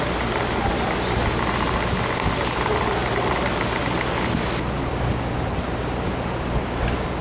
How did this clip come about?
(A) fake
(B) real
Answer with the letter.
B